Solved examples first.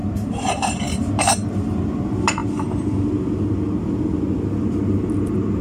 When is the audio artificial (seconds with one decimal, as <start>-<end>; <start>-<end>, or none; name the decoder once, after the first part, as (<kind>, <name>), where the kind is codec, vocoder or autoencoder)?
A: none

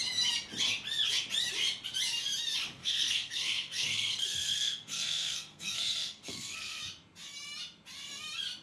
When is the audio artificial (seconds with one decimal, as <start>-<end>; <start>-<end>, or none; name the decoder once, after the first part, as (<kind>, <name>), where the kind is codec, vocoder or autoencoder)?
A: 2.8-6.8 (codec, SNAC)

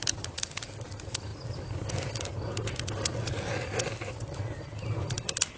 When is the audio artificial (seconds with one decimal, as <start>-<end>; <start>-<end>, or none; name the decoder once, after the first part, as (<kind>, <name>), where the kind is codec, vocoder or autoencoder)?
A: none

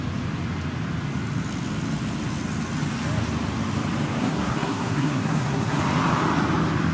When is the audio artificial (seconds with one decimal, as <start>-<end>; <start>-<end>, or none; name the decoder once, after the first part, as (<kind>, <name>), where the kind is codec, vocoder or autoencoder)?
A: 4.2-5.8 (codec, SNAC)